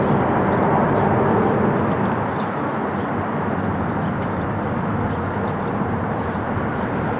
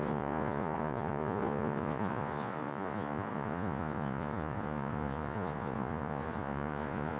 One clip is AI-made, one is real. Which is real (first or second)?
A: first